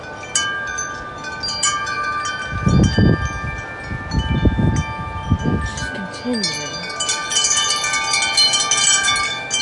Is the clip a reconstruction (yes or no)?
no